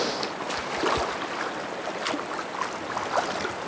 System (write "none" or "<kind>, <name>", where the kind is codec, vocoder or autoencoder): none